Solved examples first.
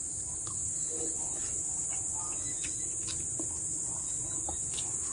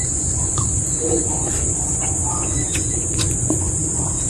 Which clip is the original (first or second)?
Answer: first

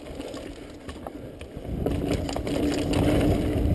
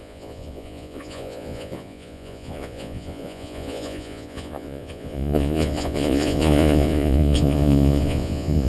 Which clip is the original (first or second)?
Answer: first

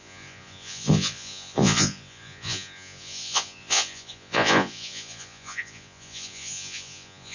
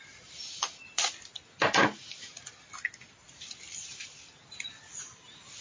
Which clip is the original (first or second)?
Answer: second